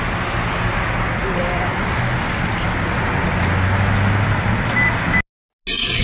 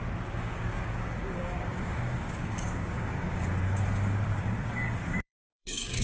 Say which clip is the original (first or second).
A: first